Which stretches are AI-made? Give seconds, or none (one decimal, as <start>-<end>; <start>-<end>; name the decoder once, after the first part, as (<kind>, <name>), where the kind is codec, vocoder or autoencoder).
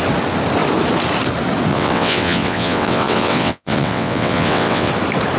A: 1.7-4.9 (vocoder, WaveNeXt)